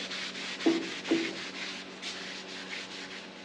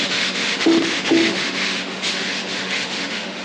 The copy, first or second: second